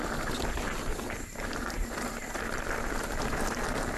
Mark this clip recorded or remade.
recorded